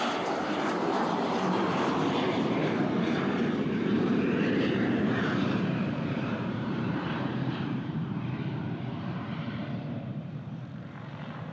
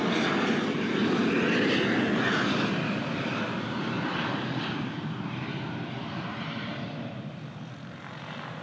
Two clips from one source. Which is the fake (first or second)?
first